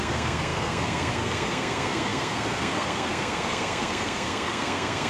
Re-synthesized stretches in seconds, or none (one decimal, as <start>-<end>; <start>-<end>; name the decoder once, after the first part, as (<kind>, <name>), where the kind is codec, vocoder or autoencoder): 0.0-5.1 (codec, SNAC)